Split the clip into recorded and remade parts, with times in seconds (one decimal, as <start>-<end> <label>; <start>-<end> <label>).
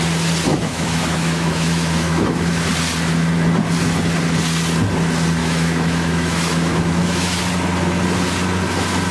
0.0-0.5 recorded; 0.5-2.7 remade; 2.7-5.4 recorded; 5.4-7.4 remade; 7.4-9.1 recorded